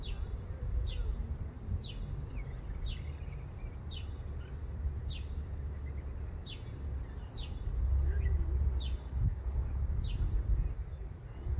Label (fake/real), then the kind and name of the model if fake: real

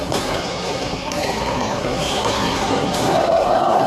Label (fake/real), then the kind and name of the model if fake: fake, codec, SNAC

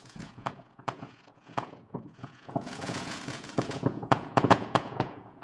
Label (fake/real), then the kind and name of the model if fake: fake, vocoder, Vocos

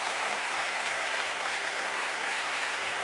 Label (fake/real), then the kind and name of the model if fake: fake, codec, SNAC